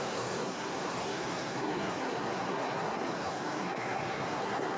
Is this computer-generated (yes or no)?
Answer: yes